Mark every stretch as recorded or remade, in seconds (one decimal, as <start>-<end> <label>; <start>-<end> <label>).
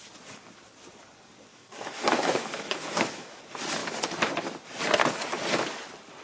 0.0-1.5 recorded; 1.5-3.4 remade; 3.4-6.2 recorded